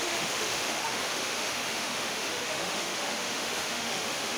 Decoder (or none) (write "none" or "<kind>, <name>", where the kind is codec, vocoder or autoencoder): autoencoder, DAC-VAE